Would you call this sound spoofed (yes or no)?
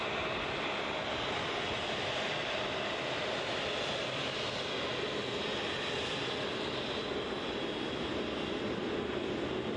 no